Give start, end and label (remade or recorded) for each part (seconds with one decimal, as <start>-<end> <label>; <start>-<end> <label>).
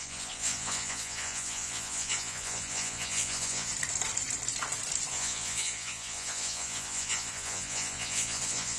0.0-3.7 remade; 3.7-5.1 recorded; 5.1-8.8 remade